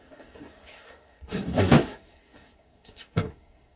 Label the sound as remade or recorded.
remade